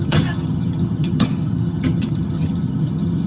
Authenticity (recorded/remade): remade